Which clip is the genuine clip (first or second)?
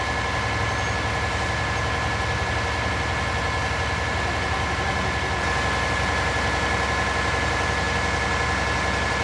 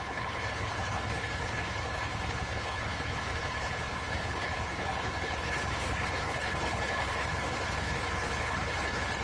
first